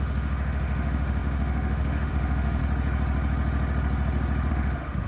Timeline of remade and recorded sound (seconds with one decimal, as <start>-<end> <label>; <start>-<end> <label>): 0.0-2.6 remade; 2.6-4.5 recorded; 4.5-5.1 remade